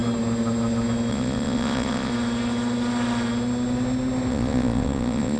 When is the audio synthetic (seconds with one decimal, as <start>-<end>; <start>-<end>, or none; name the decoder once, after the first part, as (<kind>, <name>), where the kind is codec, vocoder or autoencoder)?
1.1-2.1 (vocoder, Vocos); 4.3-5.4